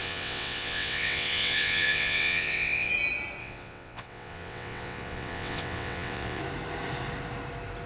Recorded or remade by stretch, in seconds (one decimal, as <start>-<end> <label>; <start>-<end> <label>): 0.0-2.9 remade; 2.9-3.4 recorded; 3.4-6.4 remade; 6.4-7.9 recorded